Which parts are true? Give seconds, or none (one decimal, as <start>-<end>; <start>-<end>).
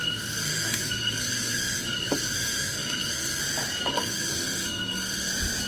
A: 3.4-3.9; 5.3-5.7